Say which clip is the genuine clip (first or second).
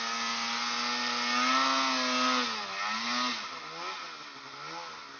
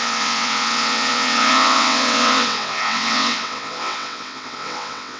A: first